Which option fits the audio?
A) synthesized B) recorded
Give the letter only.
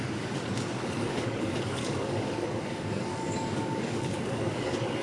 A